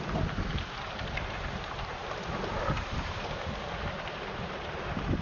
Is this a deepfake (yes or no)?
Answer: yes